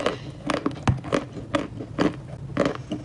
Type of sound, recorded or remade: recorded